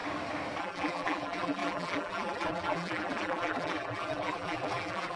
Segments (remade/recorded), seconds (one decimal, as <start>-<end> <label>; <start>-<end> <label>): 0.0-0.6 recorded; 0.6-5.2 remade